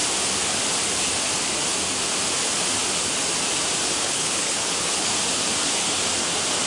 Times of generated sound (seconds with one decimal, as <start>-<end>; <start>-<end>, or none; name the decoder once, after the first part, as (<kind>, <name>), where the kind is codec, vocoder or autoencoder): 4.0-5.1 (codec, HILCodec)